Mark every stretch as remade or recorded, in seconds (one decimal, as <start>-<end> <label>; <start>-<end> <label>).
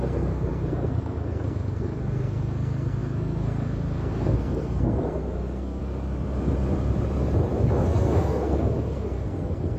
0.0-5.8 remade; 5.8-7.8 recorded; 7.8-9.8 remade